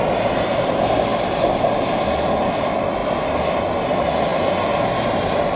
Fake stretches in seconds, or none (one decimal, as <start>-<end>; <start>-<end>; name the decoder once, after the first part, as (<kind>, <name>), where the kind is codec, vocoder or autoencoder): none